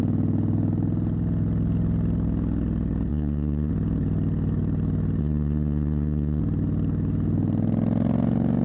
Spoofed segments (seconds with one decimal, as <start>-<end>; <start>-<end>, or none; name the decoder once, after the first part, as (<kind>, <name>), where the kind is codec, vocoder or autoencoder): 3.1-3.7 (vocoder, Vocos); 5.2-6.4